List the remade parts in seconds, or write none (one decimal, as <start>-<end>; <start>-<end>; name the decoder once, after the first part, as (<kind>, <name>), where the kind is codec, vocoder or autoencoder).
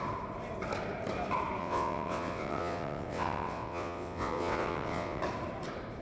1.6-5.2 (vocoder, WaveNeXt)